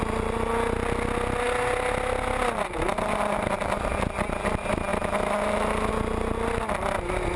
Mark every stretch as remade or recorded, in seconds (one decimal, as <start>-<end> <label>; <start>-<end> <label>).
0.0-7.4 recorded